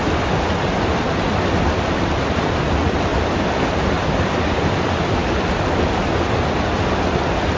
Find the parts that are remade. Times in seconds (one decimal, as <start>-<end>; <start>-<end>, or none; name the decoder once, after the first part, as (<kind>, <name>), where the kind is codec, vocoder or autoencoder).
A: none